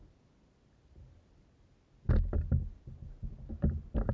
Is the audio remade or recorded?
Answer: recorded